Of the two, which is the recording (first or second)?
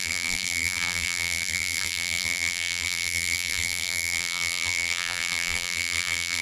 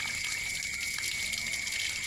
second